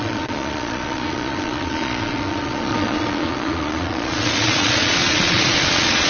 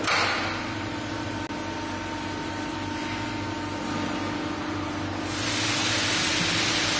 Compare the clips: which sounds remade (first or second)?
first